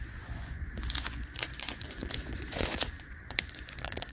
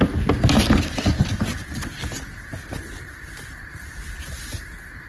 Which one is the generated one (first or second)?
first